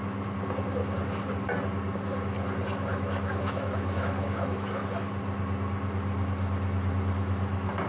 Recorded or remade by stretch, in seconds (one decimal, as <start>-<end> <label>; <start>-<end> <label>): 0.0-2.9 recorded; 2.9-4.9 remade; 4.9-7.9 recorded

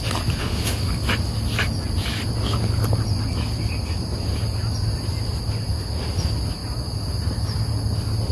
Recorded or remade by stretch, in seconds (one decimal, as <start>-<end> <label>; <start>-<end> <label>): 0.0-0.4 recorded; 0.4-0.9 remade; 0.9-8.3 recorded

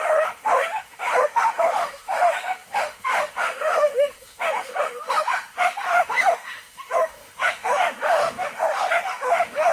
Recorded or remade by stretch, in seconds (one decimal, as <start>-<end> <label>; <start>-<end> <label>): 0.0-9.7 remade

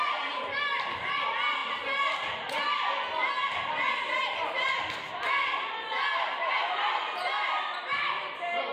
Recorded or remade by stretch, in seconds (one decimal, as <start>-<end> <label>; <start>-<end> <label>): 0.0-8.7 recorded

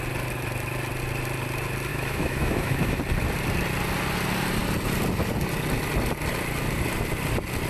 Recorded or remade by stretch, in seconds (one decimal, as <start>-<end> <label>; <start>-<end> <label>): 0.0-1.9 recorded; 1.9-3.0 remade; 3.0-7.7 recorded